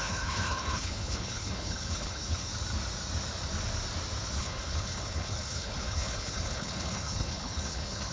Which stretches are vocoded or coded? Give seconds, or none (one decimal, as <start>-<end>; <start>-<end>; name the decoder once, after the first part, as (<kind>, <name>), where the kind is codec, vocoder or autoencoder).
0.0-2.5 (codec, HILCodec); 4.4-8.1